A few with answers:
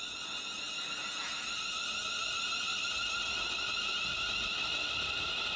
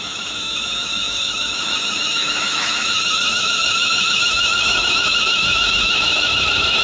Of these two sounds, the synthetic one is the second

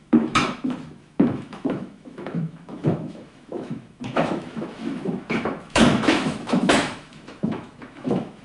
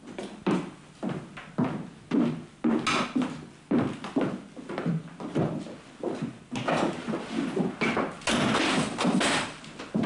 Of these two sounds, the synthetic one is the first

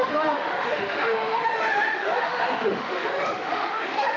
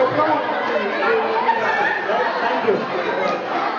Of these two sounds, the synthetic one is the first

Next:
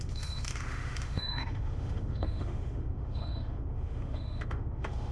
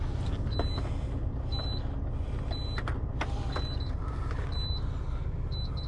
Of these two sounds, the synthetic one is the first